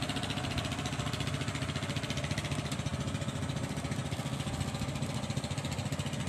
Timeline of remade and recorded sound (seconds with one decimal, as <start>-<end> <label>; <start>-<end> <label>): 0.0-6.3 recorded